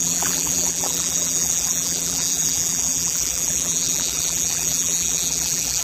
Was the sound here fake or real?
fake